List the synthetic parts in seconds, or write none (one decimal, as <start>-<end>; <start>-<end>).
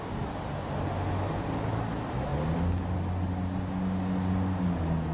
none